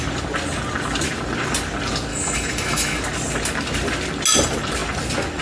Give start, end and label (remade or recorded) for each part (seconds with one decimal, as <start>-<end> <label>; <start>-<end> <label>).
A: 0.0-2.1 recorded; 2.1-3.0 remade; 3.0-5.4 recorded